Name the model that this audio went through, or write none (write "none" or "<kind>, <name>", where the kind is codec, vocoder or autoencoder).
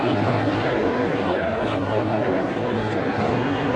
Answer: codec, SNAC